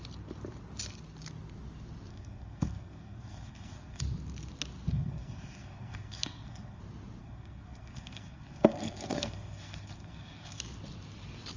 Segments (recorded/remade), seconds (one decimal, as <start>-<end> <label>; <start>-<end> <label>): 0.0-2.1 recorded; 2.1-4.0 remade; 4.0-4.9 recorded; 4.9-6.8 remade; 6.8-7.2 recorded; 7.2-10.6 remade; 10.6-11.6 recorded